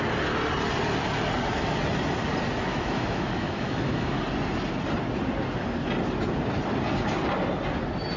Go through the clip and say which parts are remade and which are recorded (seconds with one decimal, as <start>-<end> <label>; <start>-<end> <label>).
0.0-2.7 recorded; 2.7-4.2 remade; 4.2-8.2 recorded

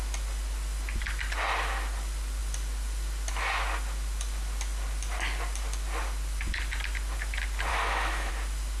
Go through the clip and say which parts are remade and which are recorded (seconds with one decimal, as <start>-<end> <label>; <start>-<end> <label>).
0.0-7.7 recorded; 7.7-8.3 remade; 8.3-8.8 recorded

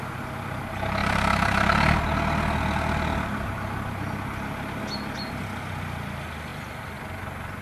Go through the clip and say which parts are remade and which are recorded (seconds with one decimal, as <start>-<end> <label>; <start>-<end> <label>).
0.0-7.6 recorded